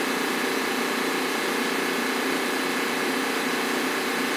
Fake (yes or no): no